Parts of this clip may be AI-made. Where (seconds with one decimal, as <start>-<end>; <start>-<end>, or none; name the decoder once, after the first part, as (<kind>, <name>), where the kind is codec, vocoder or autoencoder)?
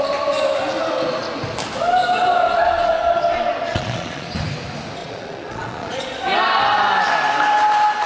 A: 3.7-4.4 (vocoder, Vocos); 5.0-6.2